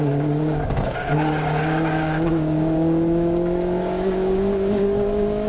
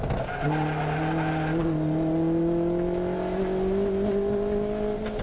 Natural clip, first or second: second